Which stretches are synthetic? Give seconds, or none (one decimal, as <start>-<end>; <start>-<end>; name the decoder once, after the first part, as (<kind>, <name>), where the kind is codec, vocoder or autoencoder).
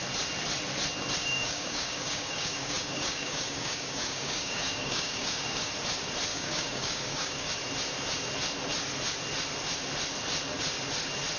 1.2-5.7 (codec, DAC); 6.3-7.5